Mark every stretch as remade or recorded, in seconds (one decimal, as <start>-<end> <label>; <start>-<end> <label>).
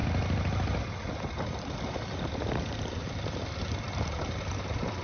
0.0-5.0 recorded